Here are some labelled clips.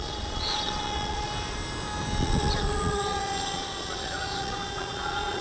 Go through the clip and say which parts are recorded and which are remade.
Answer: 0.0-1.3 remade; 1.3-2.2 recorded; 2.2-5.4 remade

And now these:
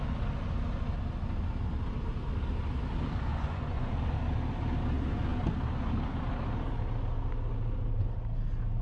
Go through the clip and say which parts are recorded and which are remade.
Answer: 0.0-3.3 recorded; 3.3-3.9 remade; 3.9-8.8 recorded